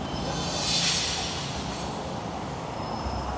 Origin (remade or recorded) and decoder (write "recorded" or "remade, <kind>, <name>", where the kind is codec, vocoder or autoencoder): recorded